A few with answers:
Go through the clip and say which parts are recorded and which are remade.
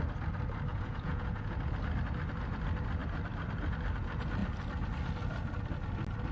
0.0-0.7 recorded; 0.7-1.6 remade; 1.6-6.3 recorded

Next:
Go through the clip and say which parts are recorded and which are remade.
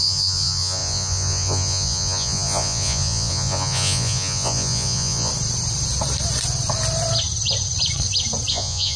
0.0-5.3 remade; 5.3-8.5 recorded; 8.5-9.0 remade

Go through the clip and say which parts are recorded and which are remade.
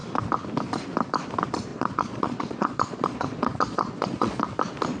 0.0-1.7 recorded; 1.7-4.4 remade; 4.4-5.0 recorded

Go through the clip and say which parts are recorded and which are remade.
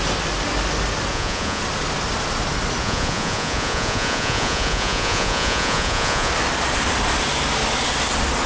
0.0-1.1 recorded; 1.1-1.6 remade; 1.6-2.8 recorded; 2.8-6.3 remade; 6.3-8.5 recorded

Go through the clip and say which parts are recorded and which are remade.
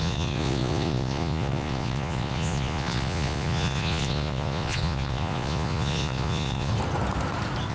0.0-6.7 remade; 6.7-7.7 recorded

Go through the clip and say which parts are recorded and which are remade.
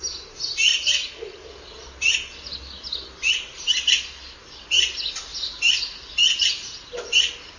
0.0-7.6 recorded